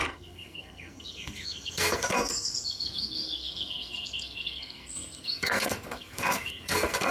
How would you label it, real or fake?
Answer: fake